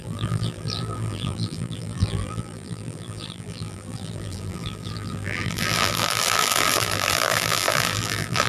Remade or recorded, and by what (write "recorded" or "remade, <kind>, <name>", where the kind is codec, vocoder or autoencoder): remade, vocoder, BigVGAN v2